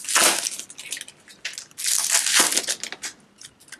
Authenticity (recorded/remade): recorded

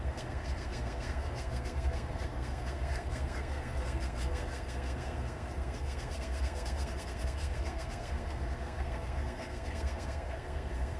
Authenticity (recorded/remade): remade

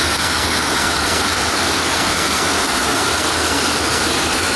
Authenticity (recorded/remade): remade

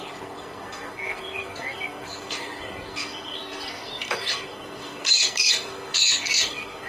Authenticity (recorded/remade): remade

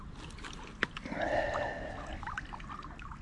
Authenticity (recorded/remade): recorded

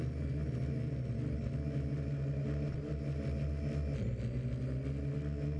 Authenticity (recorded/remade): recorded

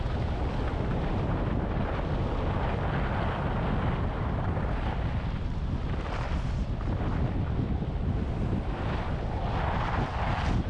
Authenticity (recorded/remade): recorded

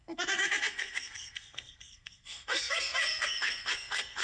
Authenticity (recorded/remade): remade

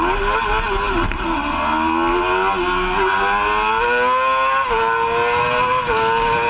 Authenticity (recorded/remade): recorded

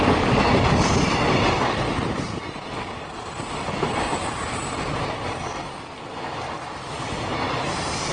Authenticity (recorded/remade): recorded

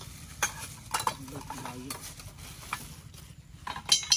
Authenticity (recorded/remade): recorded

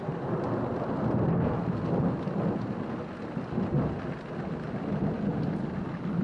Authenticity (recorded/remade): recorded